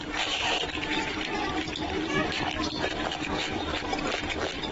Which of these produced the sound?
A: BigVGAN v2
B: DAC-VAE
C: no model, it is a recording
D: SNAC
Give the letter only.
A